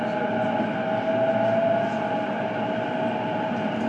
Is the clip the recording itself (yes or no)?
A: yes